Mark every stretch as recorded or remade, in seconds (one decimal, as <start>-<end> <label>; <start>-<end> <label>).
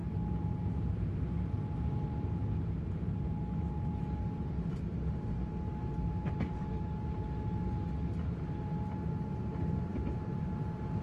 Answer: 0.0-0.7 remade; 0.7-11.0 recorded